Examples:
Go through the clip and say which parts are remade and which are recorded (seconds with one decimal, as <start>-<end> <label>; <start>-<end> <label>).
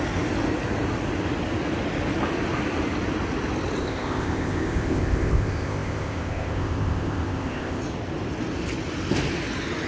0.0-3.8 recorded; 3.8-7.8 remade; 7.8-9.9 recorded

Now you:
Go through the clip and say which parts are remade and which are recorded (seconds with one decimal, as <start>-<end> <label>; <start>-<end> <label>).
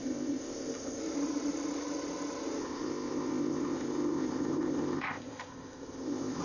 0.0-1.0 remade; 1.0-2.6 recorded; 2.6-6.4 remade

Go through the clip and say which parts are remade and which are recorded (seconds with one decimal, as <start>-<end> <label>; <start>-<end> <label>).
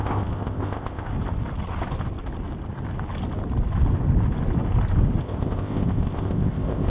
0.0-1.1 remade; 1.1-5.2 recorded; 5.2-6.9 remade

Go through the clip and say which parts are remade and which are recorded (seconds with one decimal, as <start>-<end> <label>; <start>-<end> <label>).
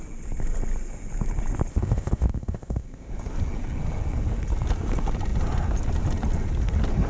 0.0-1.7 recorded; 1.7-3.1 remade; 3.1-7.1 recorded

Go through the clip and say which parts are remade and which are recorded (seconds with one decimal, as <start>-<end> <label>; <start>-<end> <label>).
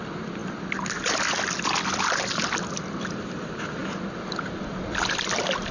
0.0-5.7 recorded